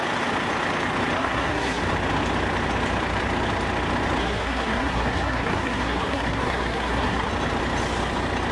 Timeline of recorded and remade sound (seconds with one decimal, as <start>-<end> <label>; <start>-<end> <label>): 0.0-1.2 recorded; 1.2-1.8 remade; 1.8-4.2 recorded; 4.2-7.3 remade; 7.3-8.5 recorded